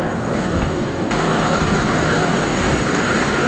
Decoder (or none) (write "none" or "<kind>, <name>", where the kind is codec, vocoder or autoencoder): codec, DAC